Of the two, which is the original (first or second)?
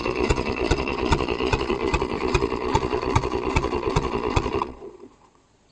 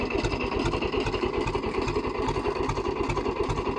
second